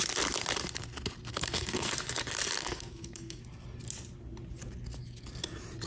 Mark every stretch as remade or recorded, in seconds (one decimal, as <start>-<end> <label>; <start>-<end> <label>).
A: 0.0-1.3 recorded; 1.3-1.9 remade; 1.9-2.6 recorded; 2.6-3.4 remade; 3.4-5.9 recorded